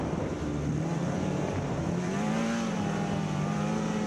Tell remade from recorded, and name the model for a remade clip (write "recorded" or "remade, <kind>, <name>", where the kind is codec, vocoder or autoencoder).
remade, vocoder, BigVGAN v2